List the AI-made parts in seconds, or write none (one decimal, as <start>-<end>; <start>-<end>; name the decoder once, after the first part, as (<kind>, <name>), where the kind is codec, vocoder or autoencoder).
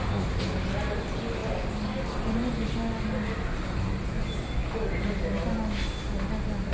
none